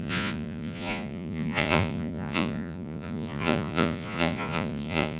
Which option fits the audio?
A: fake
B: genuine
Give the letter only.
A